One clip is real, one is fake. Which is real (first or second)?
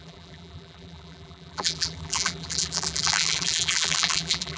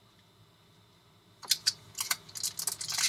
second